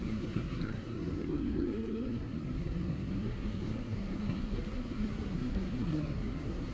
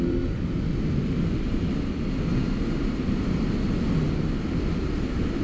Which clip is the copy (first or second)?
first